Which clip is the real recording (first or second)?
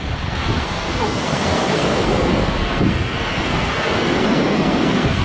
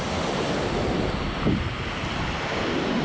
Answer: second